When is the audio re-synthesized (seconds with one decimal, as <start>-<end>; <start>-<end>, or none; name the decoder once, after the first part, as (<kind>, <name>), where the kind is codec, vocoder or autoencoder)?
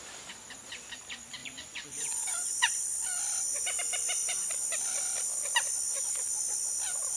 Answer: 1.4-2.7 (vocoder, Vocos)